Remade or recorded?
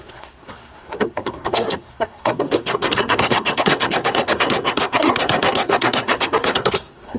remade